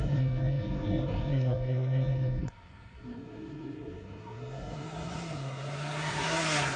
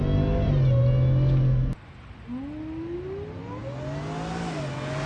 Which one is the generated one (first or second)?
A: first